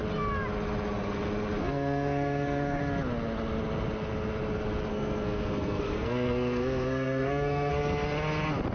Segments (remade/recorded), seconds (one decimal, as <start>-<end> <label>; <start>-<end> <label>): 0.0-1.6 recorded; 1.6-2.8 remade; 2.8-4.9 recorded; 4.9-7.7 remade; 7.7-8.7 recorded